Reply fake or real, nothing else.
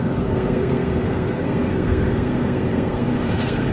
fake